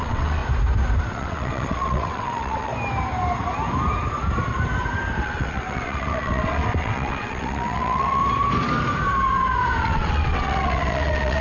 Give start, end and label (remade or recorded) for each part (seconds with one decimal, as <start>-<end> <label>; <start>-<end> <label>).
0.0-0.4 remade; 0.4-1.1 recorded; 1.1-2.7 remade; 2.7-5.2 recorded; 5.2-8.2 remade; 8.2-9.8 recorded; 9.8-11.4 remade